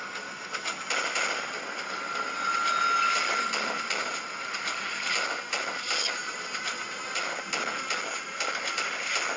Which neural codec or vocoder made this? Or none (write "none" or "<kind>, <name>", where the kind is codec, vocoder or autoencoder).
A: none